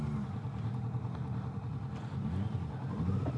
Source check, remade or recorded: recorded